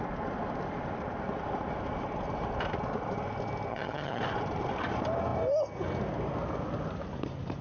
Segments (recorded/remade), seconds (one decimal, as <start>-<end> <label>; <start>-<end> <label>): 0.0-3.7 recorded; 3.7-4.2 remade; 4.2-7.6 recorded